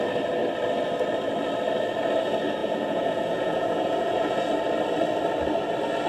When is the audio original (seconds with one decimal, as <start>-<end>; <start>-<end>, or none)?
0.0-2.6; 4.5-6.1